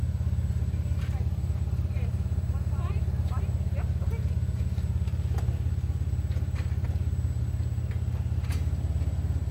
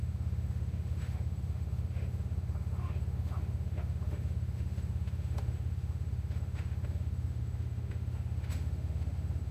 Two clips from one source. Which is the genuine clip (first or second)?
first